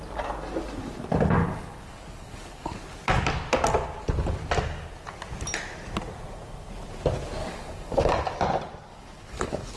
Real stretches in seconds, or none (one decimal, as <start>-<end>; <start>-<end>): 0.0-1.4; 2.8-7.4; 8.1-8.9